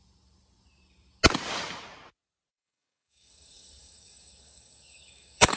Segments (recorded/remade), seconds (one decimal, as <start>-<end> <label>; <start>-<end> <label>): 0.0-2.5 recorded; 2.5-5.6 remade